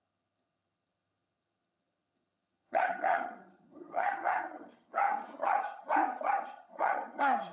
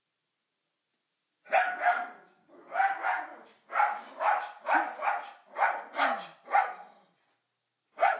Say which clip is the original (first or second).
second